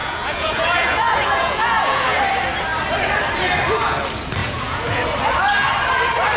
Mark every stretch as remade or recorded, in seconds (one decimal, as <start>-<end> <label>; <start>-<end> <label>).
0.0-2.2 remade; 2.2-4.4 recorded; 4.4-5.0 remade; 5.0-6.4 recorded